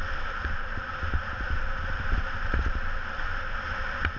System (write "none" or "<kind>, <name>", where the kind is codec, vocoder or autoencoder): none